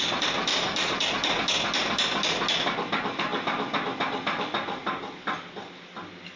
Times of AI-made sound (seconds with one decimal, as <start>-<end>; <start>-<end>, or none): 0.5-1.1